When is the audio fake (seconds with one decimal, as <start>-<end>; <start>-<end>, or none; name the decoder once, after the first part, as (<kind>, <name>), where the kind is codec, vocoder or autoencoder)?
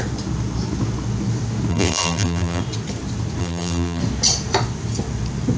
1.7-2.6 (vocoder, BigVGAN v2); 3.4-4.0